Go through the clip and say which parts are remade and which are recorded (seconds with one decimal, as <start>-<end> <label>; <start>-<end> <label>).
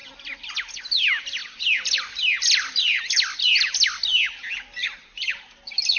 0.0-6.0 recorded